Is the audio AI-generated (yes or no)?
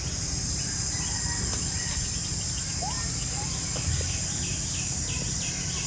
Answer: no